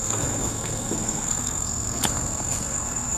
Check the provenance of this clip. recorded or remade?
remade